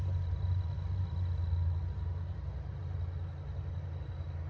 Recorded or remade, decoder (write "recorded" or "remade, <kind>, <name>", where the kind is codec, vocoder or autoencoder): recorded